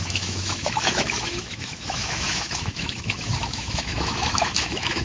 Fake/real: fake